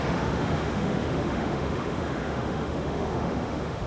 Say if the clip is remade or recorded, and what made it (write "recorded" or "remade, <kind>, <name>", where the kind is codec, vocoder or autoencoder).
remade, autoencoder, DAC-VAE